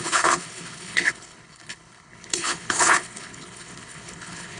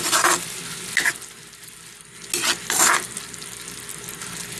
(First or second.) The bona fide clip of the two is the second